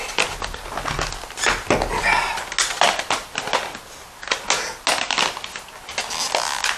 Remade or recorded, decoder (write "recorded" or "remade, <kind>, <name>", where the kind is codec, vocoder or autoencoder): recorded